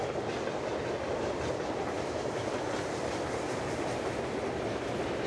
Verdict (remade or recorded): recorded